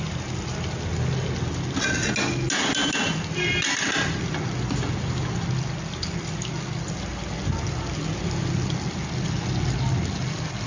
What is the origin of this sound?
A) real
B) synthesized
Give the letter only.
A